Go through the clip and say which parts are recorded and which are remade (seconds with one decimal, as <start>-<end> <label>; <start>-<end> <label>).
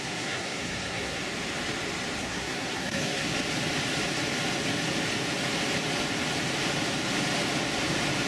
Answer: 0.0-1.2 remade; 1.2-2.2 recorded; 2.2-3.3 remade; 3.3-8.3 recorded